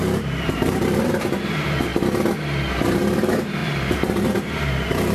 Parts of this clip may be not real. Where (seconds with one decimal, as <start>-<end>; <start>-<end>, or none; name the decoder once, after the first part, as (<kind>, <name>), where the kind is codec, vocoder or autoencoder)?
0.0-1.9 (vocoder, BigVGAN v2); 2.7-5.1